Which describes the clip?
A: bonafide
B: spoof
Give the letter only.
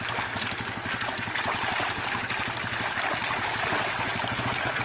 A